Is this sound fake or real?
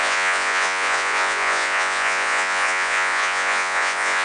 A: fake